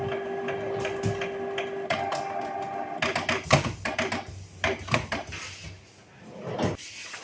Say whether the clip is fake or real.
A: real